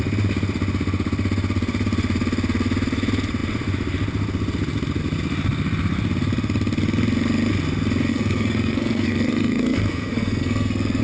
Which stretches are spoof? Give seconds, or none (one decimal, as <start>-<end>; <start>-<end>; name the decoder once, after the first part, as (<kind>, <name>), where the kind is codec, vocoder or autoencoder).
8.1-11.0 (codec, SNAC)